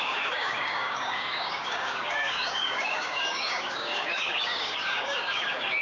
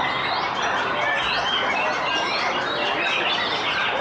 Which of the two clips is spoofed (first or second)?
first